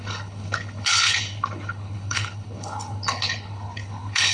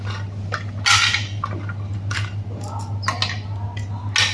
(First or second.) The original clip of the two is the second